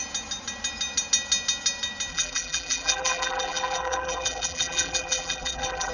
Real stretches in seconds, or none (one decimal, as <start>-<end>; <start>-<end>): 0.0-2.1